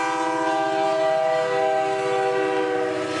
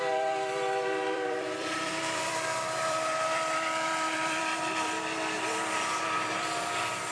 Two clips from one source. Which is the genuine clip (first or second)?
first